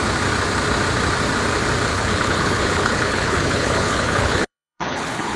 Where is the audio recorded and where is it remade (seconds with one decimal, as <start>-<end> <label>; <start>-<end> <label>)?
0.0-1.9 recorded; 1.9-5.4 remade